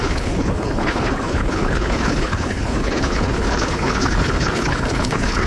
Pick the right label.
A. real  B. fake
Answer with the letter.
B